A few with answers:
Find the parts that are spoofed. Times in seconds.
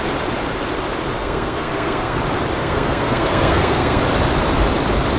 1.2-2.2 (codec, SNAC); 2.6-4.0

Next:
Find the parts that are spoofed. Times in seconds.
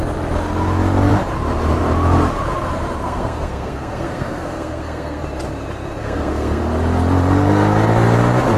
3.0-5.2 (codec, SNAC); 6.0-6.6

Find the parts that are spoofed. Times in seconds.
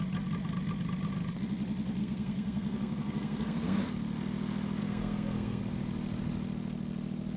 2.0-3.8 (codec, SNAC); 4.8-5.6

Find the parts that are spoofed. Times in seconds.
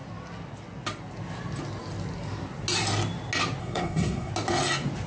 3.6-4.3 (codec, SNAC)